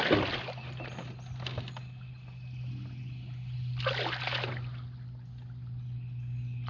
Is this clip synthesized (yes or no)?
no